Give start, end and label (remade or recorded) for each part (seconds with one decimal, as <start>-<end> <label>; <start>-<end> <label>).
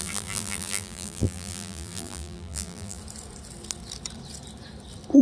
0.0-3.0 remade; 3.0-5.2 recorded